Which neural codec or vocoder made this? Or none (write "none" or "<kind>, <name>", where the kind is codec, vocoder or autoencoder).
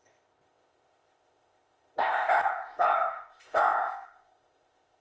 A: codec, ZipCodec